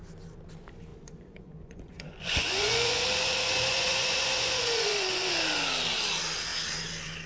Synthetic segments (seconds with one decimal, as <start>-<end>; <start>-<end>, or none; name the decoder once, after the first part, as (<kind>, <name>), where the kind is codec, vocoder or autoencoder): 0.9-5.3 (vocoder, Vocos)